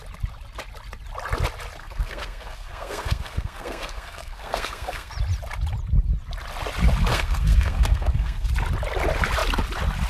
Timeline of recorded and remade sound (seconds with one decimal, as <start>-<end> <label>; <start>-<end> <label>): 0.0-1.8 recorded; 1.8-5.1 remade; 5.1-7.1 recorded; 7.1-8.5 remade; 8.5-10.1 recorded